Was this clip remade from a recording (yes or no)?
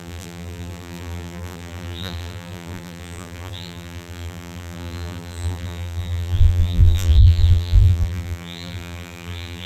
yes